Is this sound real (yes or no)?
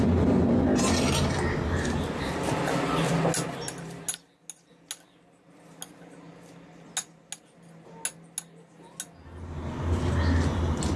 yes